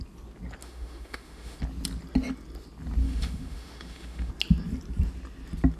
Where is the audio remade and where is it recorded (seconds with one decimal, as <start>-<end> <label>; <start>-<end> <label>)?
0.0-0.6 recorded; 0.6-1.6 remade; 1.6-3.0 recorded; 3.0-4.3 remade; 4.3-5.8 recorded